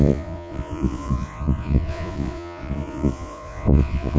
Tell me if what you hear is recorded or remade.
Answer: remade